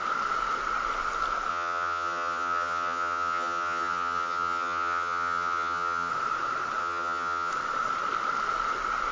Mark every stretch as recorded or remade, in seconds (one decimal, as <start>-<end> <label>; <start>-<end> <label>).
0.0-1.5 recorded; 1.5-6.1 remade; 6.1-6.8 recorded; 6.8-7.5 remade; 7.5-9.1 recorded